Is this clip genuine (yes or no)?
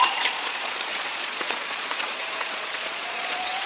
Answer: no